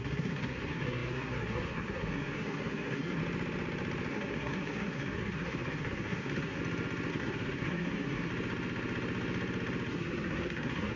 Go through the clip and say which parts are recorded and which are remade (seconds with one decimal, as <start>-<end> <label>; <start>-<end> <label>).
0.0-3.2 remade; 3.2-4.1 recorded; 4.1-6.6 remade; 6.6-7.1 recorded; 7.1-8.3 remade; 8.3-9.9 recorded; 9.9-11.0 remade